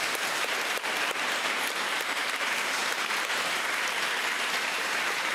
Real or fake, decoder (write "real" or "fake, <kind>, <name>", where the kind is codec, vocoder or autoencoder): fake, vocoder, BigVGAN v2